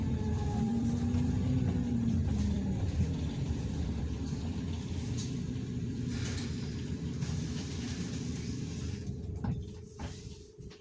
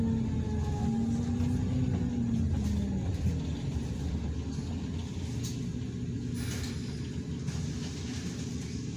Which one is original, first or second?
second